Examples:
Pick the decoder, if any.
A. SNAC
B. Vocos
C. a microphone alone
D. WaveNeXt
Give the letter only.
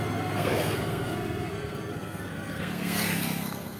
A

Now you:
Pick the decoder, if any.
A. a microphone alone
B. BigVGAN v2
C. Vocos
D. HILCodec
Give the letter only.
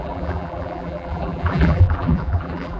B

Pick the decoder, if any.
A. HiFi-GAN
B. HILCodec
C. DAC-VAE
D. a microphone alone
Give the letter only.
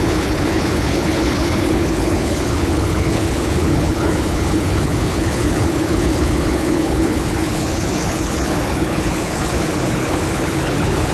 B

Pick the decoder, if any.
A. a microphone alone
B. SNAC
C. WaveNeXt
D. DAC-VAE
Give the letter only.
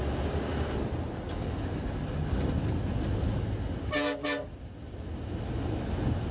A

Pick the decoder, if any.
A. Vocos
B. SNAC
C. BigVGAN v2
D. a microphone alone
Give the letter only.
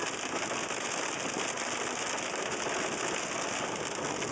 D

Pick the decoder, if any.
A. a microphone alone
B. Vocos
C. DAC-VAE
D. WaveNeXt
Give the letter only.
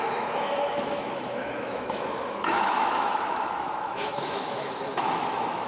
C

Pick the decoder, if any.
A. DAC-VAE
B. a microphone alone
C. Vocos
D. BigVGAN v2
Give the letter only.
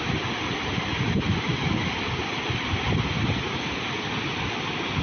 B